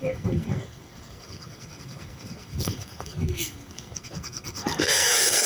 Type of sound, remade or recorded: remade